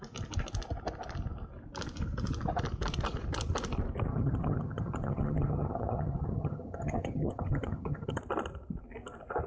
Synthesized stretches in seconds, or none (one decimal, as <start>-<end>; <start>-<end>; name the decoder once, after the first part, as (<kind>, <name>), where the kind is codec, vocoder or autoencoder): 4.1-8.2 (vocoder, HiFi-GAN)